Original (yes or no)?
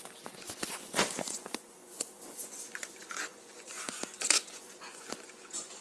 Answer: no